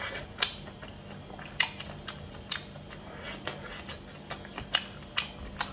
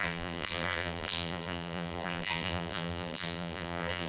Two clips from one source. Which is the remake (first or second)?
second